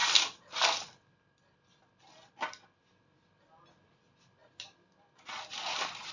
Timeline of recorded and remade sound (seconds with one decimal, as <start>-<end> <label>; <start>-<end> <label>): 0.0-6.1 recorded